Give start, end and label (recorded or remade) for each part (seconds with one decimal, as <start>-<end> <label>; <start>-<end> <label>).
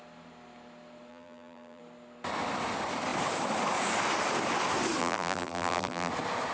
0.0-1.1 recorded; 1.1-1.8 remade; 1.8-5.0 recorded; 5.0-6.1 remade; 6.1-6.5 recorded